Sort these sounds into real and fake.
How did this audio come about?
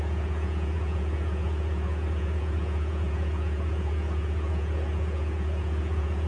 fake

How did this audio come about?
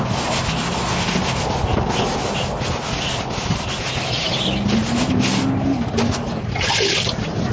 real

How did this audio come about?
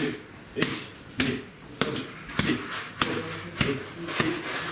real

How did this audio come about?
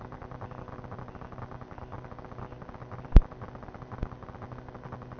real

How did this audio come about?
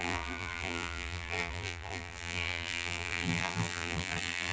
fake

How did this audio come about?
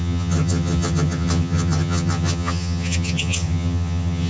fake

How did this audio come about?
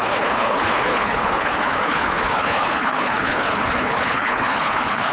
fake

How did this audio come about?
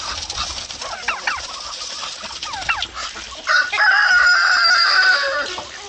real